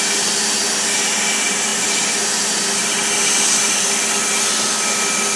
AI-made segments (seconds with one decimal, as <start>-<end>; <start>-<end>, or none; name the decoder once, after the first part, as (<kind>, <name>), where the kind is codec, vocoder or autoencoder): none